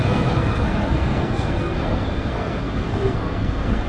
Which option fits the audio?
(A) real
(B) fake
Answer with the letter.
B